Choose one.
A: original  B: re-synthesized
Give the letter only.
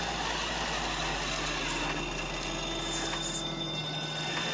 A